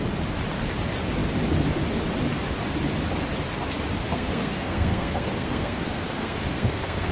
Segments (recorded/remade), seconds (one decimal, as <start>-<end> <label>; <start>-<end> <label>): 0.0-4.1 recorded; 4.1-7.1 remade